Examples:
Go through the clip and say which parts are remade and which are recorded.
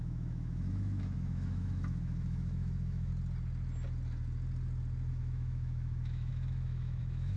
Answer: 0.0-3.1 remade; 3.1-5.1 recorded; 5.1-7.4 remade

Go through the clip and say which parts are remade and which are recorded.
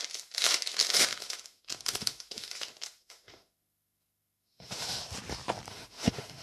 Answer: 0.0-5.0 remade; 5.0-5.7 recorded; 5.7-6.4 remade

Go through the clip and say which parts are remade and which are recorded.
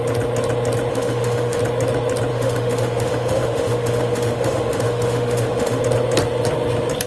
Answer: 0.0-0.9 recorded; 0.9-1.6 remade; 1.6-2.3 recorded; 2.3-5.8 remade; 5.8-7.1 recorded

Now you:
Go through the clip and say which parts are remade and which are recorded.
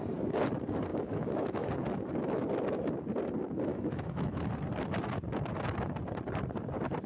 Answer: 0.0-0.9 recorded; 0.9-1.7 remade; 1.7-3.7 recorded; 3.7-4.5 remade; 4.5-7.1 recorded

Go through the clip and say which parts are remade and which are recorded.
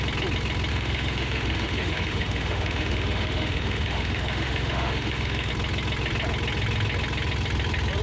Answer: 0.0-0.7 recorded; 0.7-5.5 remade; 5.5-8.0 recorded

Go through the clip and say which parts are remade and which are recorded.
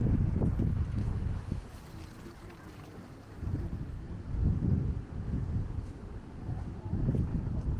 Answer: 0.0-1.0 recorded; 1.0-1.7 remade; 1.7-4.4 recorded; 4.4-6.8 remade; 6.8-7.8 recorded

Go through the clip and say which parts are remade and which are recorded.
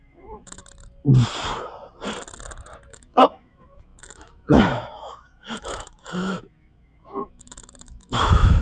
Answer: 0.0-0.6 remade; 0.6-2.9 recorded; 2.9-8.6 remade